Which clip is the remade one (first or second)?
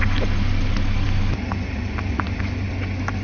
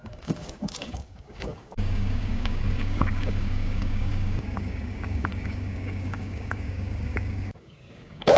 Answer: second